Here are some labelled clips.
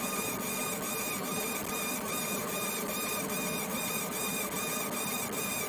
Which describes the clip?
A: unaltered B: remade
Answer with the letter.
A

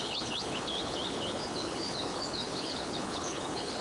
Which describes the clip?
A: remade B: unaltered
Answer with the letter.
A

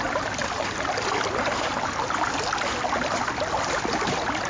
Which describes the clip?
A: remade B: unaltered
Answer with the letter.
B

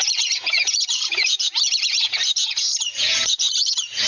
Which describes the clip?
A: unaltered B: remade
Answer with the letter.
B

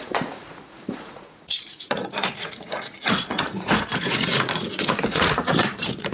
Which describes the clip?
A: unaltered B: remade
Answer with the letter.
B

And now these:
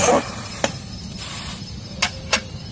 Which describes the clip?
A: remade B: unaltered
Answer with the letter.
B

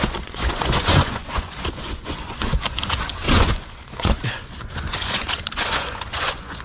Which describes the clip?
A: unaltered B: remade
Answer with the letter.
B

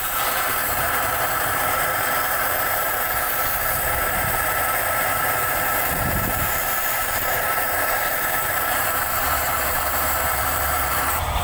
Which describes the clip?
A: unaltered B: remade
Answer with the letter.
B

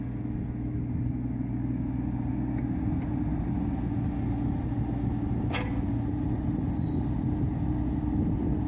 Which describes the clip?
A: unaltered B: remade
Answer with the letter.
A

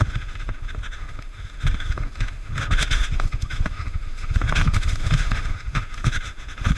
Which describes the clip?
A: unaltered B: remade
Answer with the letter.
B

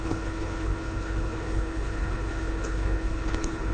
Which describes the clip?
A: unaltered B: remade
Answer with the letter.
B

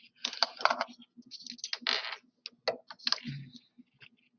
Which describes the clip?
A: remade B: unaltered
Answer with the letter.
B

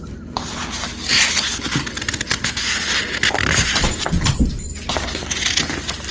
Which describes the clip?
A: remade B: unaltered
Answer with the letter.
B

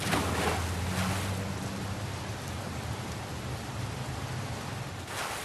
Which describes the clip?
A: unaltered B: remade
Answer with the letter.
A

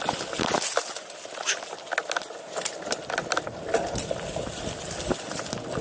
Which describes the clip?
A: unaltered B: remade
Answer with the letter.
A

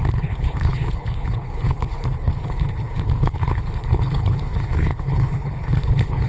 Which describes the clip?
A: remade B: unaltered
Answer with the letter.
A